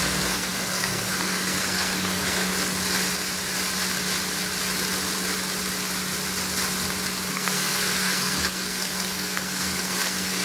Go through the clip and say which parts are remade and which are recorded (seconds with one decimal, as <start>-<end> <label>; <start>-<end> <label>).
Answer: 0.0-2.5 remade; 2.5-7.3 recorded; 7.3-10.4 remade